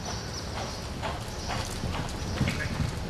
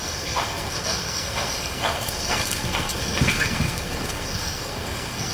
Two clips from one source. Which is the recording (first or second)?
first